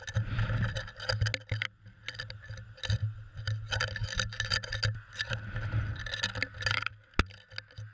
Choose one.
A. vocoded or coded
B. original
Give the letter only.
B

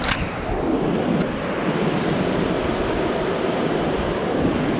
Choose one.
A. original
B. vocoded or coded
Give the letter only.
A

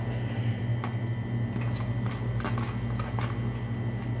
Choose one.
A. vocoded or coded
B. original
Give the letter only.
B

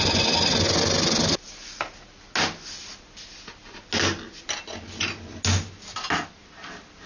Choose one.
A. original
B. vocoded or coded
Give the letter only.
A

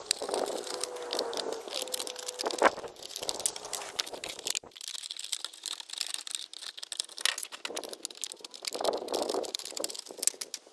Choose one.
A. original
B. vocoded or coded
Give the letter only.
A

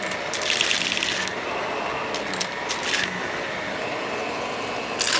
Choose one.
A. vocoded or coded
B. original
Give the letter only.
B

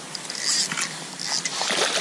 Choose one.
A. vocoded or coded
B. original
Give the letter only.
B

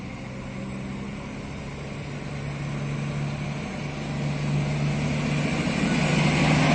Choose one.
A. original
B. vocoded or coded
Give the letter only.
A